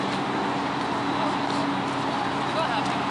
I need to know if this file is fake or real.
real